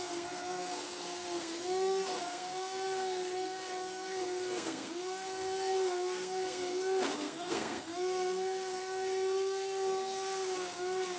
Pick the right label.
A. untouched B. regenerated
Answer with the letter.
B